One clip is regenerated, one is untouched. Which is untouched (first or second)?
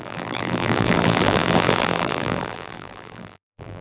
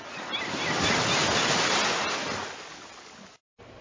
second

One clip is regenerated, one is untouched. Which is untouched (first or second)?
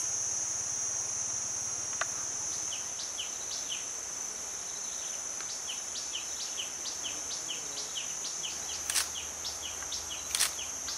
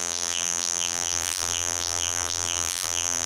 first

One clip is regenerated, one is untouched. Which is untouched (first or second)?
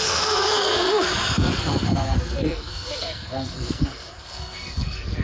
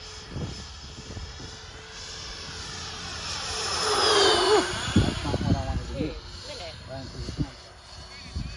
second